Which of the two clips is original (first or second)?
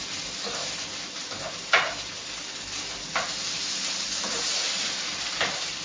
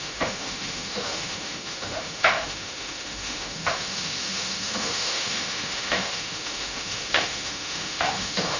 first